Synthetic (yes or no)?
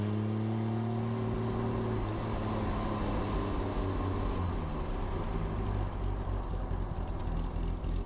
no